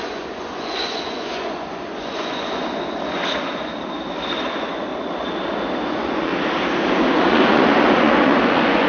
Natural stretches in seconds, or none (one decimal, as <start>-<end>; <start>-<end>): 3.7-4.5; 4.9-5.8; 6.3-6.9